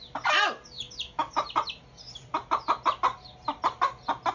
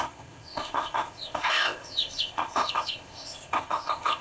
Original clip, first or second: first